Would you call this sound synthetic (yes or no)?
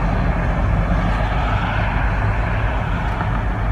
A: no